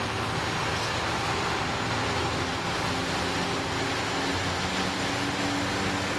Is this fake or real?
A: real